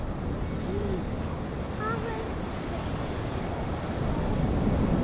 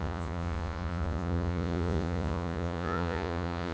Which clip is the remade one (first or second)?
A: second